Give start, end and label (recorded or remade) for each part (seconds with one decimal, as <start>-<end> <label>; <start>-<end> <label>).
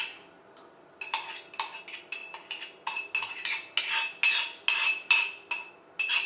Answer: 0.0-6.3 recorded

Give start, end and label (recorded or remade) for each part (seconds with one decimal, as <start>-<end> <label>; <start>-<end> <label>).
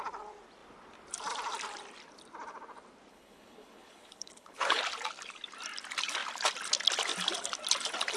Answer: 0.0-3.1 recorded; 3.1-4.8 remade; 4.8-8.2 recorded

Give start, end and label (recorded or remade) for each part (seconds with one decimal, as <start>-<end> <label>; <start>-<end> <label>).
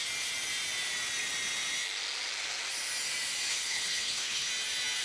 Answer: 0.0-3.5 recorded; 3.5-4.5 remade; 4.5-5.0 recorded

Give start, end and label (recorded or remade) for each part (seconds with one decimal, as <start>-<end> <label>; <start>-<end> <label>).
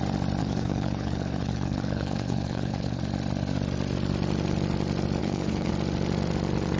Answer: 0.0-0.4 recorded; 0.4-3.0 remade; 3.0-5.2 recorded; 5.2-5.7 remade; 5.7-6.8 recorded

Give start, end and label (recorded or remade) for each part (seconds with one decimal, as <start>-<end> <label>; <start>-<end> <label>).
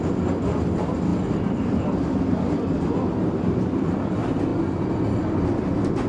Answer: 0.0-6.1 recorded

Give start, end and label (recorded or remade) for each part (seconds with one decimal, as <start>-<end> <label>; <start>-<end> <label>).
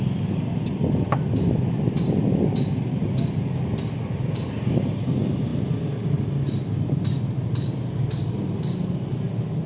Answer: 0.0-9.7 recorded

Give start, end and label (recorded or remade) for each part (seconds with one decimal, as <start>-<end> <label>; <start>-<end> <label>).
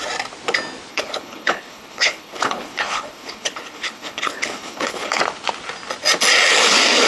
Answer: 0.0-0.9 recorded; 0.9-5.2 remade; 5.2-7.1 recorded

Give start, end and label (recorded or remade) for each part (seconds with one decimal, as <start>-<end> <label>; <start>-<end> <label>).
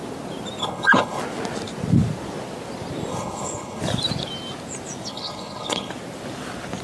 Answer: 0.0-0.6 recorded; 0.6-1.2 remade; 1.2-3.1 recorded; 3.1-3.8 remade; 3.8-5.1 recorded; 5.1-5.9 remade; 5.9-6.8 recorded